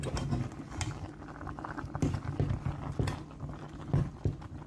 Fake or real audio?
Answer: real